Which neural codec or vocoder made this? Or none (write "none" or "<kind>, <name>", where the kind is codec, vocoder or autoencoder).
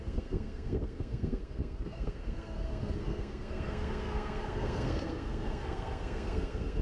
codec, SNAC